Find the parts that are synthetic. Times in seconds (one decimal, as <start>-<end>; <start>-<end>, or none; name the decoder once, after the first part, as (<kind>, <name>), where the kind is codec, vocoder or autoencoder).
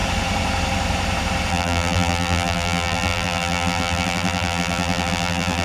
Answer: 1.5-5.6 (vocoder, BigVGAN v2)